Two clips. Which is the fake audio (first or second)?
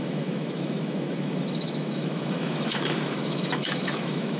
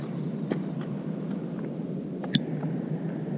first